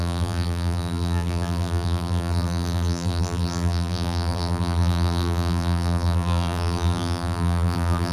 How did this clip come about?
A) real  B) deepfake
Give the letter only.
B